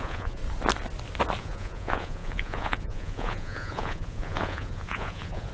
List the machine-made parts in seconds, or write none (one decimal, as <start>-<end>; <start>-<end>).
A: 0.0-0.4; 1.4-5.5